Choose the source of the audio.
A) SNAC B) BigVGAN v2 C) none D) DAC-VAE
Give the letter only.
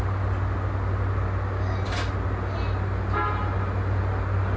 C